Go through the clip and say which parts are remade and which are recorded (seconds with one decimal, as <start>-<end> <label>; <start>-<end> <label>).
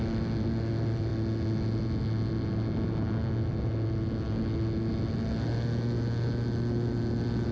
0.0-7.5 recorded